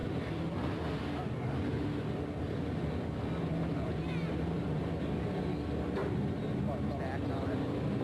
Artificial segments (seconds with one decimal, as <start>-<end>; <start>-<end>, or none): none